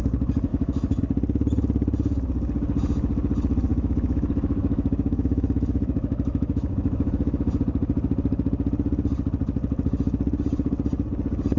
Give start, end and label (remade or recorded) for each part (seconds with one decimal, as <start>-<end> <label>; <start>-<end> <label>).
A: 0.0-0.5 recorded; 0.5-1.0 remade; 1.0-3.7 recorded; 3.7-7.6 remade; 7.6-11.6 recorded